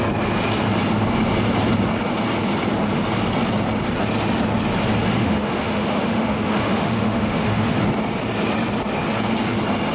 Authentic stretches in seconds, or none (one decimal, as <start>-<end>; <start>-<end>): 0.0-5.2; 7.8-9.9